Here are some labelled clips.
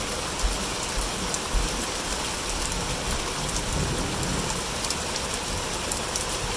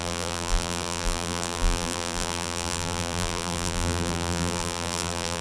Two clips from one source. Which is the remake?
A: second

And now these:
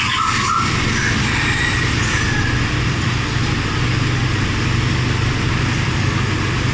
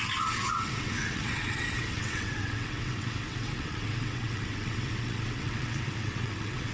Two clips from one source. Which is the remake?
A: second